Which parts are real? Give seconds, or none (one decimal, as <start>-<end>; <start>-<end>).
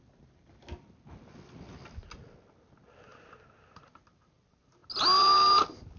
0.0-6.0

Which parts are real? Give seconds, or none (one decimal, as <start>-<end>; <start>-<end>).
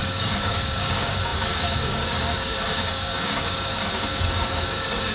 none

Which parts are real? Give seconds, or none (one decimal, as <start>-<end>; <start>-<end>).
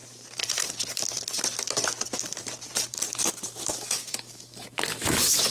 0.0-3.3